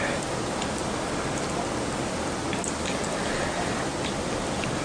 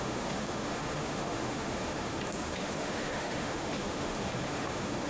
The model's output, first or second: second